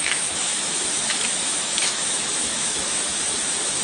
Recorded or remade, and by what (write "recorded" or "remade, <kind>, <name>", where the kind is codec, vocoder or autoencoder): remade, autoencoder, DAC-VAE